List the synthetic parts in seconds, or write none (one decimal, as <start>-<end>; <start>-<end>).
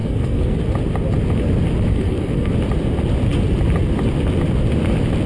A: 0.0-0.6; 1.9-2.5